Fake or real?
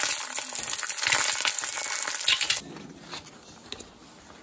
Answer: real